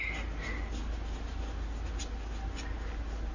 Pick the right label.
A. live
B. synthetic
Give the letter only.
A